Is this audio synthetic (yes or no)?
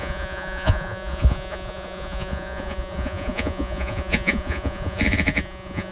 yes